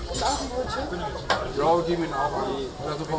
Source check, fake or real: real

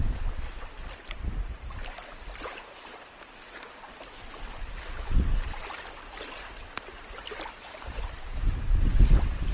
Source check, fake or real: real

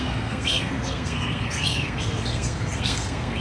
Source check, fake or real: fake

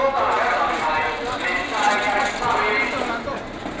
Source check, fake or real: real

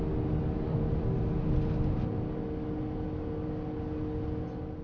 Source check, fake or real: real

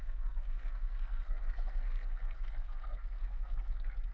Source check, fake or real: fake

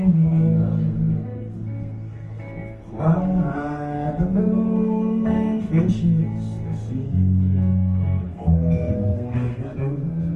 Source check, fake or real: fake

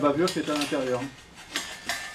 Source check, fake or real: real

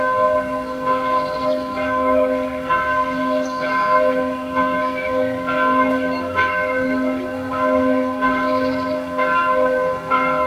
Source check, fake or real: fake